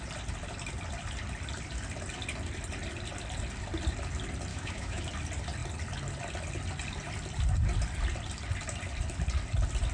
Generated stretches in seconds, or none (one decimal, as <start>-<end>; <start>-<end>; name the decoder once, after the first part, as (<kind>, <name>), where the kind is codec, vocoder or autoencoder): 4.5-5.0 (autoencoder, DAC-VAE)